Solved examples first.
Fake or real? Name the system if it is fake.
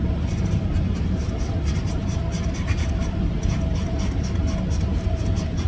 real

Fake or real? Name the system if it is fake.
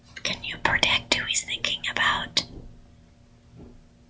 real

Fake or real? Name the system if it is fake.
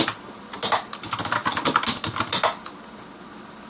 real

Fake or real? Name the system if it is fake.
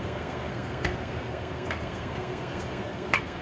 fake, codec, SNAC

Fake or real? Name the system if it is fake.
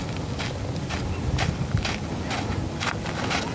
real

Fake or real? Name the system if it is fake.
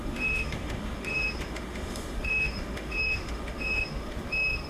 fake, autoencoder, DAC-VAE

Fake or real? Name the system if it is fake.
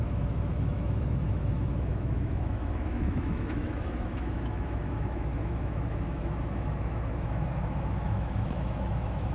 fake, autoencoder, DAC-VAE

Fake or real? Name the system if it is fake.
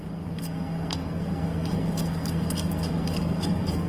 fake, codec, SNAC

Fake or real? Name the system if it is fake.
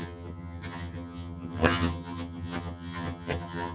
fake, vocoder, HiFi-GAN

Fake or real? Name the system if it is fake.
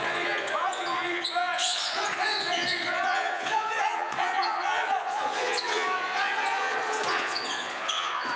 fake, vocoder, Vocos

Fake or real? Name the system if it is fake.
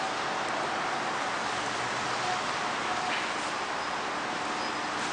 real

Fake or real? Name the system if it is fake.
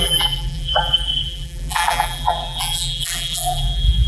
fake, vocoder, BigVGAN v2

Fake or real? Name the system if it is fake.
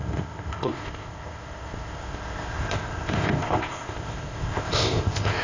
fake, codec, ZipCodec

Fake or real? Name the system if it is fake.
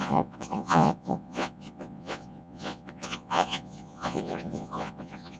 fake, vocoder, Vocos